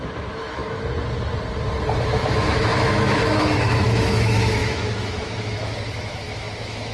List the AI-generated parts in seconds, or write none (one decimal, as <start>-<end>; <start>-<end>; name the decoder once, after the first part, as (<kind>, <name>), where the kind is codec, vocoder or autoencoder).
0.0-0.6 (autoencoder, DAC-VAE); 2.0-6.9

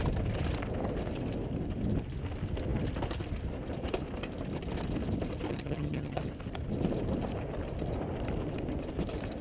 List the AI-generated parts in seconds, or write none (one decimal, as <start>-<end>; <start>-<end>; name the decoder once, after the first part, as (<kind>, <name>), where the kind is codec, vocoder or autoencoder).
5.5-6.2 (vocoder, HiFi-GAN)

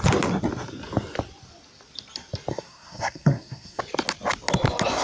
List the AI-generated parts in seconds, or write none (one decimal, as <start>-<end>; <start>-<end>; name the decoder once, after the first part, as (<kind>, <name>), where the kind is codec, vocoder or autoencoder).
2.5-3.8 (codec, SNAC)

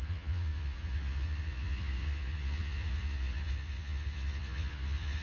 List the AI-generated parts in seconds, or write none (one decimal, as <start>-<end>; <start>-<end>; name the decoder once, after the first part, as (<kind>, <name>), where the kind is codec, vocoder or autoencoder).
0.0-5.2 (vocoder, Vocos)